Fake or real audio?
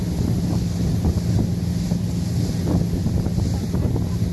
real